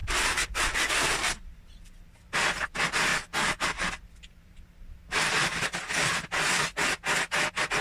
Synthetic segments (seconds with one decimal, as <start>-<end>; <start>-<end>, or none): 0.0-2.1; 3.1-5.7